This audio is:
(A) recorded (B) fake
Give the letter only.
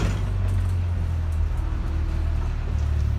A